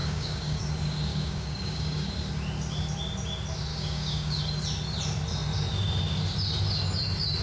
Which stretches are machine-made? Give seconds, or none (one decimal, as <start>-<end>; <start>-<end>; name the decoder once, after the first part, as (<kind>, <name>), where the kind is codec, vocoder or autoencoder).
0.0-0.6 (codec, DAC); 1.1-2.1; 3.7-4.4